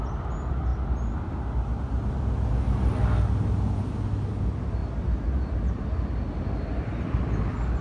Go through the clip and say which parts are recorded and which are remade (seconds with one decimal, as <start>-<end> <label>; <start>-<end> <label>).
0.0-4.8 recorded; 4.8-6.4 remade; 6.4-7.8 recorded